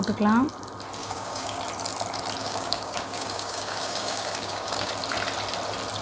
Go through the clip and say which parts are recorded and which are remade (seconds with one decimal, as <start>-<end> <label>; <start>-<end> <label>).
0.0-1.0 recorded; 1.0-1.6 remade; 1.6-2.4 recorded; 2.4-4.9 remade; 4.9-6.0 recorded